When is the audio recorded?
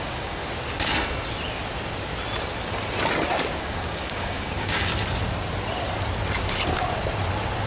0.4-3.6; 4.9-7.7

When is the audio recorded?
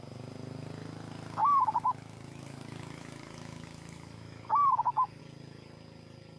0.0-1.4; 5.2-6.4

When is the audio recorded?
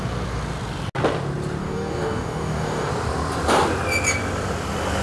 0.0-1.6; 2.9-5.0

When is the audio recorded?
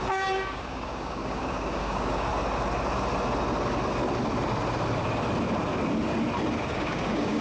2.3-6.7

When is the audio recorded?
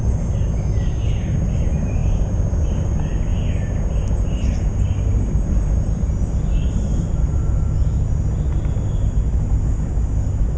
0.0-10.6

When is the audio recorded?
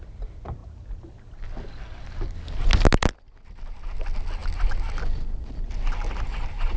0.0-6.8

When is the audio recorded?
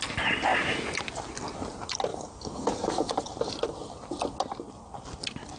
0.0-2.1; 3.1-5.6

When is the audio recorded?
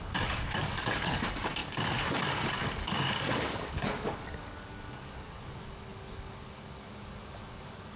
none